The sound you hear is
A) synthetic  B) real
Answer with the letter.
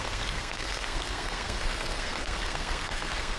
A